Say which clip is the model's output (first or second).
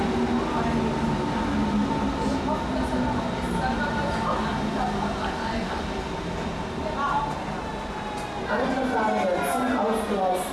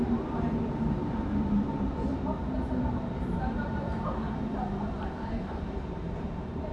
second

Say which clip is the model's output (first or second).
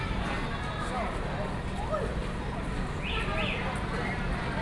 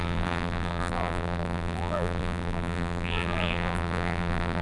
second